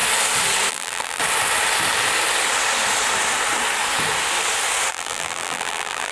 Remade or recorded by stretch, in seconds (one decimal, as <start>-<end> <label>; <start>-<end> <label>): 0.0-0.7 recorded; 0.7-1.2 remade; 1.2-4.9 recorded; 4.9-6.1 remade